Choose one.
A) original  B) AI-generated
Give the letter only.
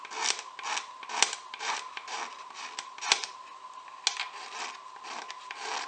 A